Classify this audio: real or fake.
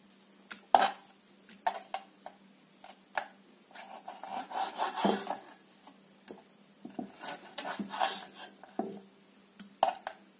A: real